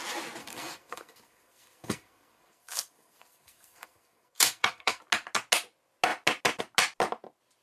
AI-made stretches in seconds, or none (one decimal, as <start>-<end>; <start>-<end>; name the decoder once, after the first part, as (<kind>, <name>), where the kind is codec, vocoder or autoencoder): 0.4-5.0 (codec, SNAC)